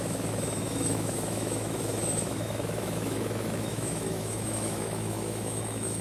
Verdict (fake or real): fake